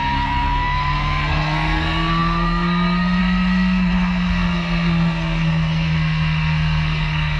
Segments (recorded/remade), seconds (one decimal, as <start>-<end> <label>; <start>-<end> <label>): 0.0-7.4 remade